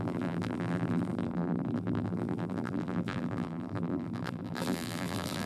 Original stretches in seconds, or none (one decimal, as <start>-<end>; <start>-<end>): none

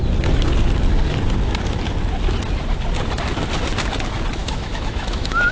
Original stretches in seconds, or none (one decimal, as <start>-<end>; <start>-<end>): 0.0-4.4

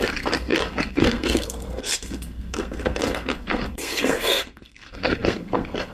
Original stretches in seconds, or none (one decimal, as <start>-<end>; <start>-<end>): none

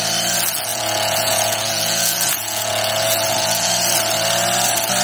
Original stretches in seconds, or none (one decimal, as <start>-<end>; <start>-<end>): 0.0-0.7; 3.7-5.0

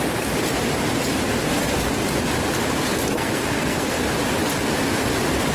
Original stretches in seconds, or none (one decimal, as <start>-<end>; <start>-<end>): 0.0-3.1; 4.0-5.5

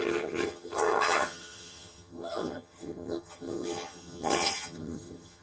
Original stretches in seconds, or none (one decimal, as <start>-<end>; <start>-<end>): none

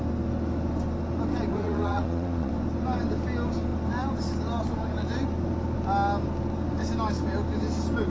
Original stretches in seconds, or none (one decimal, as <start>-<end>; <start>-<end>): 0.0-1.5; 2.5-8.1

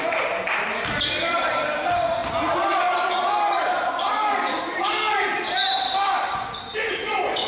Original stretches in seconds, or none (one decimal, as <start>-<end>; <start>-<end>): 2.2-2.8